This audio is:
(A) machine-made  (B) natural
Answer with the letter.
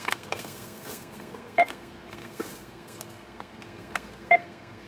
A